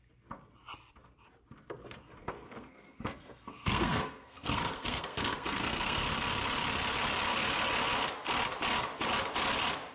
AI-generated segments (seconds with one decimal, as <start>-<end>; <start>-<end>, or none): 2.2-6.0